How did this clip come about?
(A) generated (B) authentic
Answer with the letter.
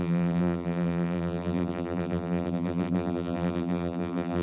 A